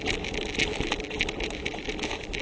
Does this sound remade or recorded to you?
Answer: recorded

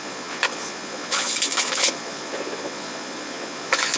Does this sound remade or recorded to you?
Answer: remade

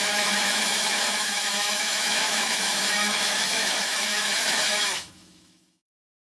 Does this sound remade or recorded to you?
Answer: remade